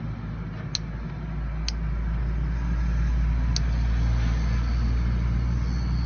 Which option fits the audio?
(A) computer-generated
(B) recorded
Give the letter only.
B